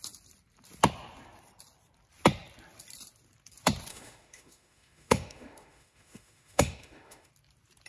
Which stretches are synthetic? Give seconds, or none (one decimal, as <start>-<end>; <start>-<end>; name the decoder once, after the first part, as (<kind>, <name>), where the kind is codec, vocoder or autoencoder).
3.9-7.3 (autoencoder, DAC-VAE)